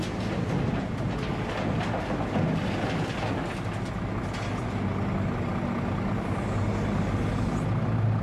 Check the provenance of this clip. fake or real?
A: real